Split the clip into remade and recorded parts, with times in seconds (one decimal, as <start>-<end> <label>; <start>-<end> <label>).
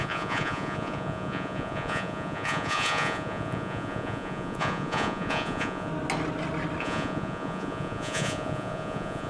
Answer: 0.0-5.9 remade; 5.9-6.8 recorded; 6.8-9.3 remade